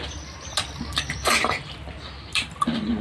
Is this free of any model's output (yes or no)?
yes